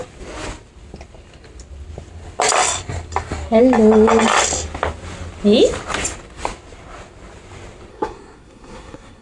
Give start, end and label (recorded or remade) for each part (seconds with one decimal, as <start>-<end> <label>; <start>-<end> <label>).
0.0-7.9 recorded; 7.9-9.2 remade